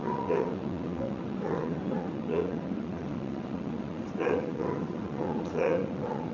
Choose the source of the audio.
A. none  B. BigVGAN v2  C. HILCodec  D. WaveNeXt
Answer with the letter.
D